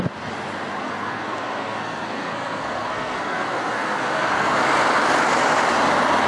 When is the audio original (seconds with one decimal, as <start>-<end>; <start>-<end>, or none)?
0.0-0.8; 4.6-6.3

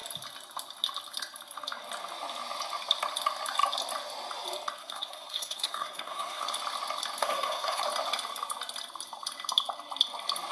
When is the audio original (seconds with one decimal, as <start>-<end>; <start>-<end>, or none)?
0.0-4.8; 6.4-7.2; 7.8-10.5

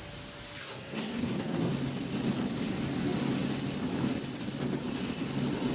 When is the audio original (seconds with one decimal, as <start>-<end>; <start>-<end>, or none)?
0.0-0.6; 1.7-5.7

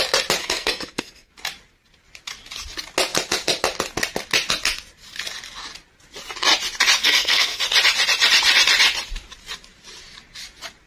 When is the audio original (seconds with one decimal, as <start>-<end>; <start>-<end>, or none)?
0.0-0.4; 1.3-7.0; 7.6-10.9

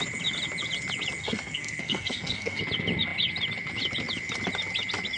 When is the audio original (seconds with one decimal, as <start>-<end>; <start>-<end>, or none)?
0.0-1.2; 2.6-5.2

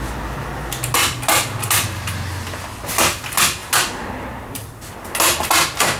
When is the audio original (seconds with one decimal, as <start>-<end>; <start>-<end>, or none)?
0.0-6.0

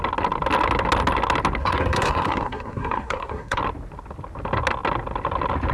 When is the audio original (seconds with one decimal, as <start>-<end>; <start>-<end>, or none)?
0.0-1.6; 3.6-5.7

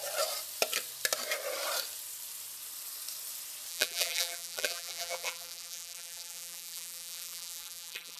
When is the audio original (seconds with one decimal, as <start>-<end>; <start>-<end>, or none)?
0.0-3.7